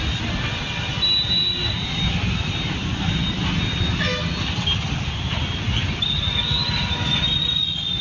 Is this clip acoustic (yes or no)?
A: yes